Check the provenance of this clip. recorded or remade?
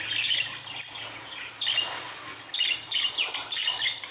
recorded